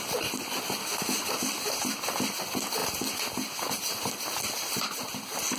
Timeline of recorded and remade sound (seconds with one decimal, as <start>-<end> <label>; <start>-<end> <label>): 0.0-0.8 recorded; 0.8-1.3 remade; 1.3-5.6 recorded